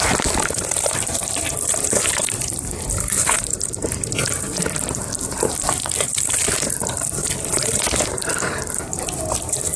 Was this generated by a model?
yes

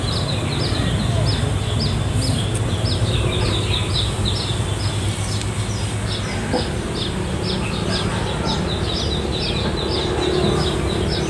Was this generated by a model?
no